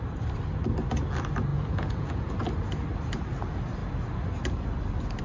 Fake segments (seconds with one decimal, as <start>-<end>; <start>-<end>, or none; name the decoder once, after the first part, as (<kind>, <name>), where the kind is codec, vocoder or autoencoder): 1.5-2.3 (vocoder, Vocos)

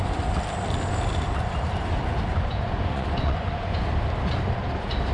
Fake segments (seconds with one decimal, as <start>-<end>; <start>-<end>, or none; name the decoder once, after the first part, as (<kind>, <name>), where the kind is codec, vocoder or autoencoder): 2.3-3.9 (vocoder, Vocos)